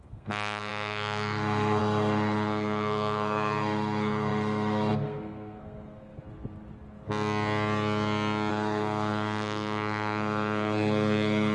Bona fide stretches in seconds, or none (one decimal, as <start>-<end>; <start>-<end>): 6.2-8.5